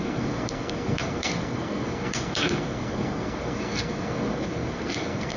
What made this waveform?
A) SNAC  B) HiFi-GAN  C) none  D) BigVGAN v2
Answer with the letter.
A